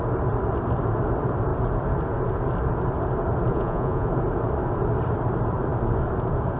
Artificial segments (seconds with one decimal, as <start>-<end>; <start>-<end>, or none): 3.5-4.1